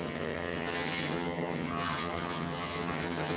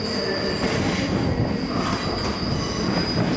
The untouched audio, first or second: second